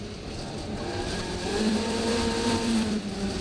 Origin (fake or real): fake